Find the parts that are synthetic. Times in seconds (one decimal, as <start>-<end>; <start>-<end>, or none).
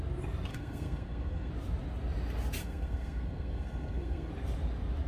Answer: 0.5-1.5; 2.6-4.3